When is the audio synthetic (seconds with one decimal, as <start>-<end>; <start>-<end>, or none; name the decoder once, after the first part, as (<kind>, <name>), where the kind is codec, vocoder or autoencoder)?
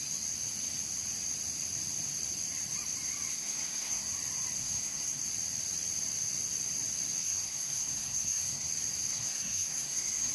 3.3-4.0 (codec, SNAC); 4.6-5.2; 7.2-8.7; 9.1-10.3